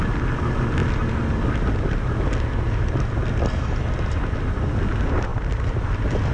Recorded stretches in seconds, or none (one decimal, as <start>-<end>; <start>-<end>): 0.0-5.3